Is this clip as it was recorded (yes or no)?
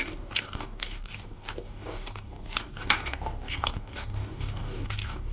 no